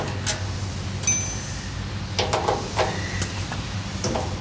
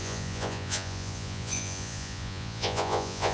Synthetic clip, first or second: second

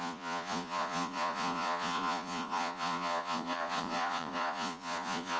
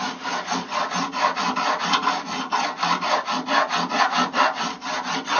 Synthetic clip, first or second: first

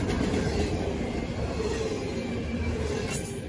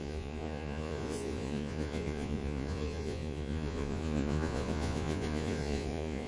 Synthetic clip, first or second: second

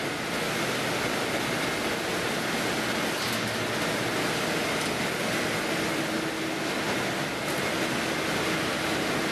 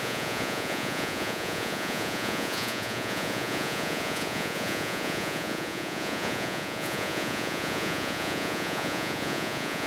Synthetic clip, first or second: second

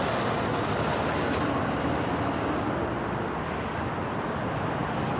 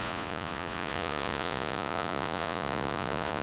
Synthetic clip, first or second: second